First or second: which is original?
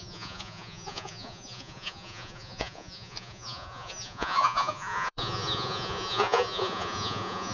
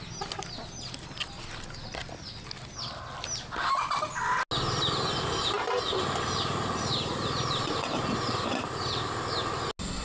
second